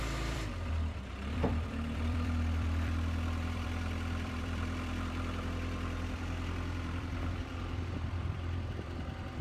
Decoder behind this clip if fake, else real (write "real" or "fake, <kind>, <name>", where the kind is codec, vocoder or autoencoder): fake, vocoder, BigVGAN v2